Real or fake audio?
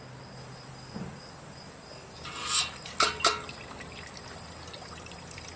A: real